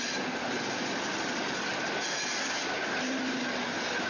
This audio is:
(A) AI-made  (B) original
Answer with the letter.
B